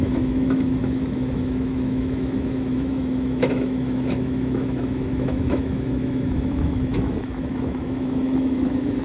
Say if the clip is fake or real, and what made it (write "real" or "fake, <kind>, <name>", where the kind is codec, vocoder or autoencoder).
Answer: fake, autoencoder, DAC-VAE